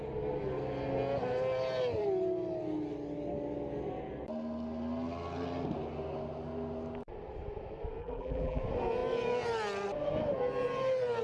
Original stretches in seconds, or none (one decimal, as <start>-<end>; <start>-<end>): 0.0-8.0; 8.6-11.2